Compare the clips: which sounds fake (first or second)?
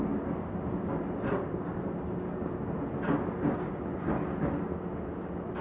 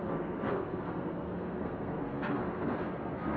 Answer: second